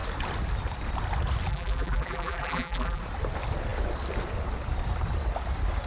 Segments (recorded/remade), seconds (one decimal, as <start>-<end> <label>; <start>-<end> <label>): 0.0-1.5 recorded; 1.5-3.0 remade; 3.0-5.9 recorded

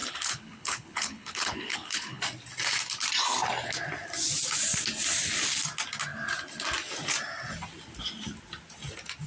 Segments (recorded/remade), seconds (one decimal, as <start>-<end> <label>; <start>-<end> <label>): 0.0-2.2 remade; 2.2-9.3 recorded

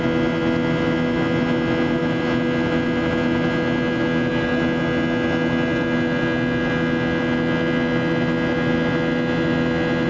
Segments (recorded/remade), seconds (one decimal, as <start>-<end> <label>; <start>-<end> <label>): 0.0-10.1 recorded

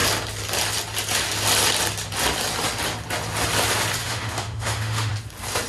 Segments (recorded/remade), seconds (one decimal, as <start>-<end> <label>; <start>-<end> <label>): 0.0-4.0 recorded; 4.0-5.1 remade; 5.1-5.7 recorded

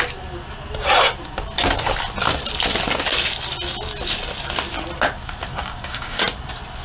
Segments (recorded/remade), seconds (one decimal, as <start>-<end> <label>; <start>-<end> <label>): 0.0-5.5 recorded; 5.5-6.2 remade; 6.2-6.8 recorded